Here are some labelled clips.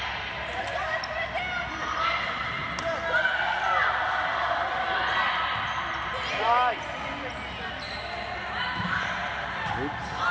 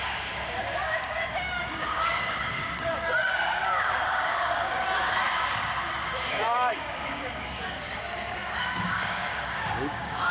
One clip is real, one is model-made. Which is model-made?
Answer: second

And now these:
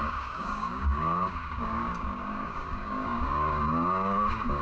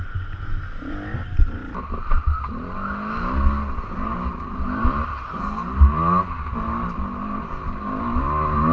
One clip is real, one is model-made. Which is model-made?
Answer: first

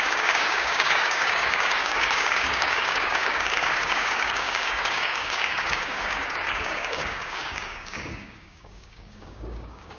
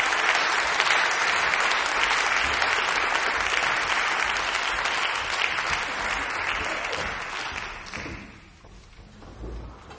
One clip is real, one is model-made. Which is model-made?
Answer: first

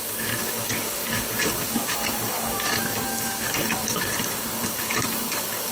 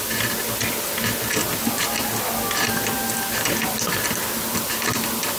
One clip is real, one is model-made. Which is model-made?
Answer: first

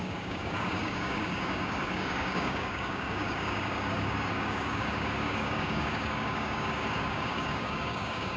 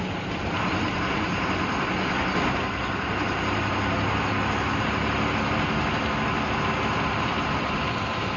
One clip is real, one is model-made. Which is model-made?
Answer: first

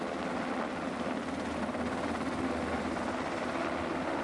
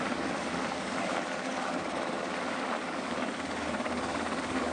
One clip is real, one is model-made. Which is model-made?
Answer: second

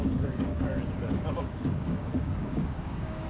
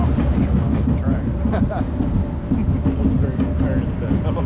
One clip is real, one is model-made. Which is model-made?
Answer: first